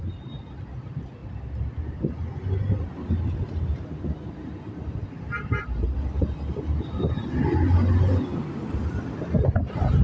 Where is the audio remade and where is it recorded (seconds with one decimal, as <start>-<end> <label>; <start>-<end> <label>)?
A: 0.0-10.0 recorded

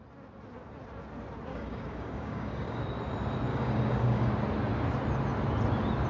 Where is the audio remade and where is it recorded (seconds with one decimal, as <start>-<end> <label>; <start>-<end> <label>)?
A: 0.0-1.5 recorded; 1.5-2.8 remade; 2.8-3.5 recorded; 3.5-4.3 remade; 4.3-6.1 recorded

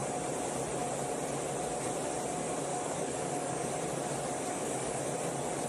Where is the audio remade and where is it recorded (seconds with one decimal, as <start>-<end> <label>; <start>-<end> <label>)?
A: 0.0-2.7 recorded; 2.7-3.7 remade; 3.7-4.5 recorded; 4.5-5.0 remade; 5.0-5.7 recorded

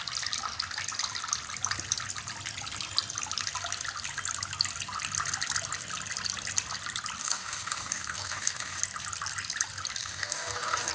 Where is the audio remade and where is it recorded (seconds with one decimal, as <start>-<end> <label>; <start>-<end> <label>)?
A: 0.0-7.2 recorded; 7.2-8.8 remade; 8.8-10.0 recorded; 10.0-10.9 remade

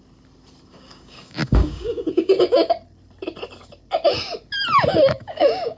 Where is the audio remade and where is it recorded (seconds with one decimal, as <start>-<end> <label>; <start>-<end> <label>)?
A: 0.0-0.7 recorded; 0.7-2.7 remade; 2.7-4.9 recorded; 4.9-5.8 remade

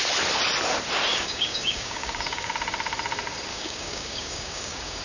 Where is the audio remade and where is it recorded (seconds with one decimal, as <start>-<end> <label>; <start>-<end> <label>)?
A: 0.0-1.1 recorded; 1.1-2.5 remade; 2.5-3.5 recorded; 3.5-5.0 remade

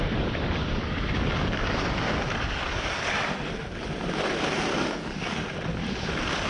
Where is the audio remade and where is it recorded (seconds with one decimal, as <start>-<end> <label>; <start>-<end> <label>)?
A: 0.0-0.6 recorded; 0.6-3.0 remade; 3.0-4.7 recorded; 4.7-5.3 remade; 5.3-6.5 recorded

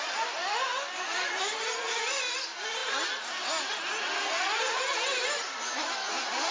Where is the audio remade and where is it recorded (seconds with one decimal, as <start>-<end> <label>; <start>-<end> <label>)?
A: 0.0-6.5 recorded